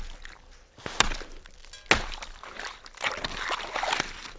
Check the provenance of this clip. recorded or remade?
recorded